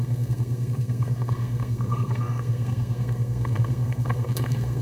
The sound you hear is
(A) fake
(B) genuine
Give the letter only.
A